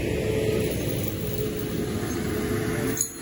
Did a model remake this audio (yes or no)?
no